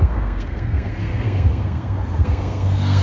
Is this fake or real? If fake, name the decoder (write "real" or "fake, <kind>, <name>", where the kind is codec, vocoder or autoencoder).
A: fake, codec, SNAC